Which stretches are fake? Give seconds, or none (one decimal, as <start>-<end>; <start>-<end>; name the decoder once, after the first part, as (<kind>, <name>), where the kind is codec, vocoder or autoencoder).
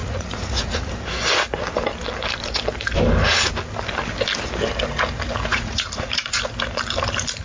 0.0-0.9 (vocoder, Vocos); 5.5-6.4